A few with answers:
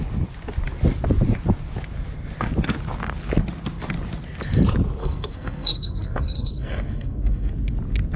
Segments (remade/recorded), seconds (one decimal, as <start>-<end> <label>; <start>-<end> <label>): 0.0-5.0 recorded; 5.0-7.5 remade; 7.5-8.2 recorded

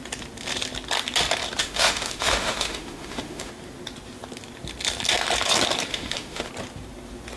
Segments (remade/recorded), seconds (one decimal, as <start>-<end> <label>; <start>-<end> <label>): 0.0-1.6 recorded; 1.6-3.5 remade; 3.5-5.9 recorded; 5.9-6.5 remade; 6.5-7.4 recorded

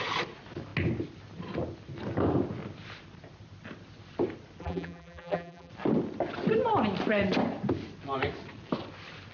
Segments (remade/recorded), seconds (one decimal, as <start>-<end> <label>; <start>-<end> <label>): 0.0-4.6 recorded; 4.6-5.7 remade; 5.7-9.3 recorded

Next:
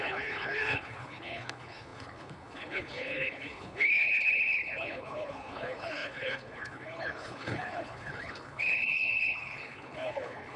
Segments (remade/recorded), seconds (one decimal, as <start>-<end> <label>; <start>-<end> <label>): 0.0-10.6 remade

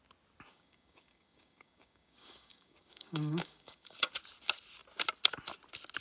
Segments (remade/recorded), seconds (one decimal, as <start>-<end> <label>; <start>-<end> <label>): 0.0-0.5 recorded; 0.5-4.1 remade; 4.1-6.0 recorded

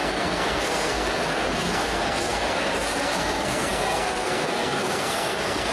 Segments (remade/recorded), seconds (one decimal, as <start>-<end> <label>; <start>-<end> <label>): 0.0-5.7 remade

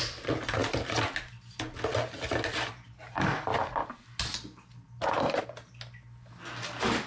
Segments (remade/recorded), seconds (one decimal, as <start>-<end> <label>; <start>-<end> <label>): 0.0-7.1 recorded

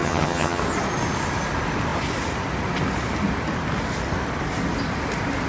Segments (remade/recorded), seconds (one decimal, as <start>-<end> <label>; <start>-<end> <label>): 0.0-0.6 remade; 0.6-5.5 recorded